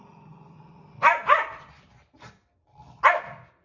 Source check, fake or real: real